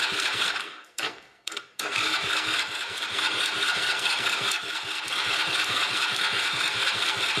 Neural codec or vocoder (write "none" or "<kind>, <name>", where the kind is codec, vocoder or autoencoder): codec, SNAC